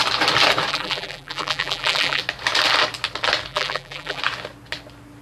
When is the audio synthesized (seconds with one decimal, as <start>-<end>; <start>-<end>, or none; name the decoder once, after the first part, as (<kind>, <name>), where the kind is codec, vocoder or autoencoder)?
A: 0.7-2.2 (vocoder, BigVGAN v2); 3.5-4.2